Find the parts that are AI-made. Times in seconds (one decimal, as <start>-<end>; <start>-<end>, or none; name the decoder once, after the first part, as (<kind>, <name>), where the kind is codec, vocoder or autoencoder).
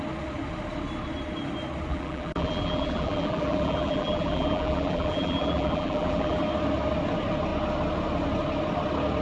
1.9-6.4 (vocoder, BigVGAN v2)